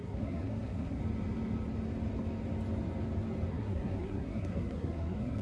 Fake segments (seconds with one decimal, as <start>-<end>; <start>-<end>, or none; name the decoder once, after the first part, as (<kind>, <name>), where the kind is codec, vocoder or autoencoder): 0.0-1.0 (codec, SNAC); 3.5-5.4

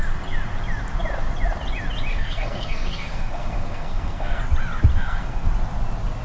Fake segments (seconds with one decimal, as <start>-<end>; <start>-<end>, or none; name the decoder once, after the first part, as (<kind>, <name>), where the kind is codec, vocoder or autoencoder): 2.1-4.4 (codec, SNAC); 4.9-5.5

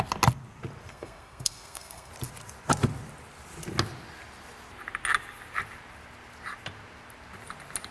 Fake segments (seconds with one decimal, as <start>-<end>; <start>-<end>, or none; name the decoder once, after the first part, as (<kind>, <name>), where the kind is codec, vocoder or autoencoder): 0.9-2.1 (codec, SNAC)

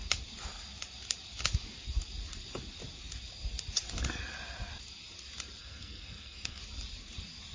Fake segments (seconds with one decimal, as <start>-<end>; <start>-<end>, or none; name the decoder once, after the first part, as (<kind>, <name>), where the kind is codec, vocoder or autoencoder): 5.6-6.6 (codec, SNAC)

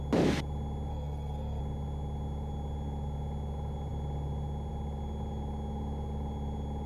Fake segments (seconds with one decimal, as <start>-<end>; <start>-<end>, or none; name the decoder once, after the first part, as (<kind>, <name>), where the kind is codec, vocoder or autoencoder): 0.9-1.6 (codec, SNAC)

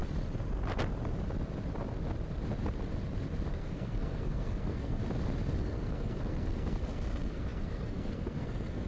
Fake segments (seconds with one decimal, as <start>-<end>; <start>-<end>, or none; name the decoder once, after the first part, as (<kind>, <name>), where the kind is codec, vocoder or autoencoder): 3.5-5.0 (codec, SNAC); 5.6-8.9

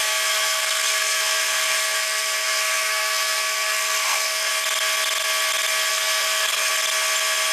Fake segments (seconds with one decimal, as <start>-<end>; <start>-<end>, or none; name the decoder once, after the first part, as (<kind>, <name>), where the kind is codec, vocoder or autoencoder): 0.0-4.5 (codec, SNAC); 5.9-6.7

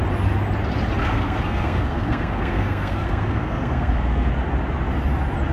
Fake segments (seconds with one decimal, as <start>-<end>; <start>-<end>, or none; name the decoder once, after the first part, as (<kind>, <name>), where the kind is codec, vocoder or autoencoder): 1.0-4.3 (codec, SNAC)